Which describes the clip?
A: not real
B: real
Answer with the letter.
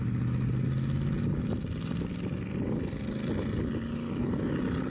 B